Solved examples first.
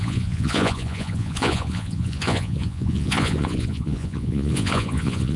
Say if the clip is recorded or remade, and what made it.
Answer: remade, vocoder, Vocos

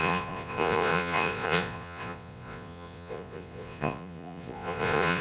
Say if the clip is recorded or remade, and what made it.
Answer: remade, vocoder, Vocos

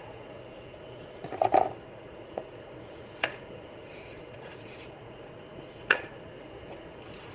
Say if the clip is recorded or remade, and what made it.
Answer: remade, vocoder, Vocos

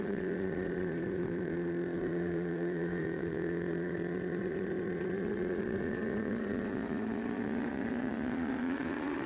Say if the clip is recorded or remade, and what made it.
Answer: remade, vocoder, Vocos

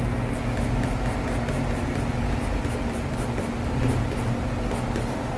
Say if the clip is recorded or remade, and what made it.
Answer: recorded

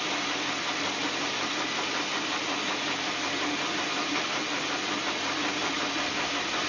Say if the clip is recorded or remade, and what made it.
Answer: recorded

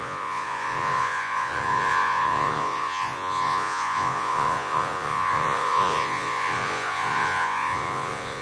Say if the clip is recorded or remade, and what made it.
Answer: remade, vocoder, Vocos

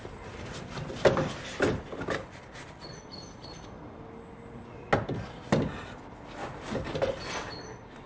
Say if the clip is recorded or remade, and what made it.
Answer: recorded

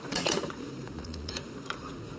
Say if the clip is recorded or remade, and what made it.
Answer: remade, vocoder, Vocos